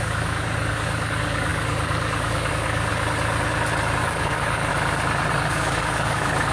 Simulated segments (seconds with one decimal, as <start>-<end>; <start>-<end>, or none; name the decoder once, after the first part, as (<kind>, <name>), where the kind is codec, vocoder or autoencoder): 0.0-2.9 (codec, DAC); 4.0-4.7; 5.3-6.5